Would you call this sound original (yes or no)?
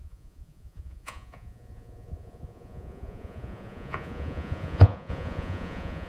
no